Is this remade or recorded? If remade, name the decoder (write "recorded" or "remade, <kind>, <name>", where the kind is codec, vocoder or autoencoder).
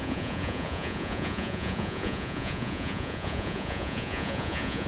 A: remade, vocoder, Vocos